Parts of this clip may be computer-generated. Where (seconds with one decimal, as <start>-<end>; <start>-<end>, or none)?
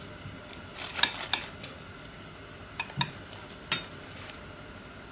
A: none